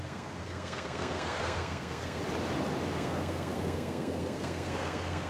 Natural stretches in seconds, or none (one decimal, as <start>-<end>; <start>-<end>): 2.2-2.9